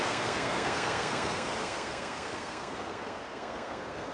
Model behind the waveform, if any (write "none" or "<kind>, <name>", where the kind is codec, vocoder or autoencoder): codec, SNAC